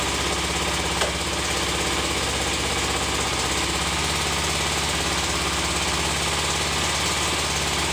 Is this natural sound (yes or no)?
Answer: yes